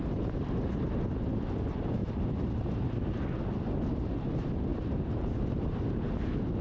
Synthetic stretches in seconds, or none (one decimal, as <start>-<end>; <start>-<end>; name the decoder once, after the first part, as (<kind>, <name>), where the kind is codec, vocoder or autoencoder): 2.0-3.2 (vocoder, BigVGAN v2); 4.7-6.1